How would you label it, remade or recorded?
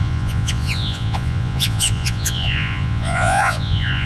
remade